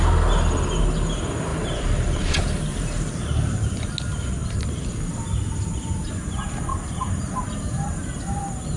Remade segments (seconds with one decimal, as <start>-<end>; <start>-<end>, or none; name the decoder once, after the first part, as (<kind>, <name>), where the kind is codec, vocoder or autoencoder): 1.5-3.9 (vocoder, BigVGAN v2); 4.4-5.0; 6.7-8.1